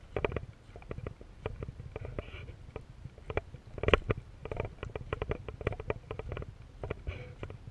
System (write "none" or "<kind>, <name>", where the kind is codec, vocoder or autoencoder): none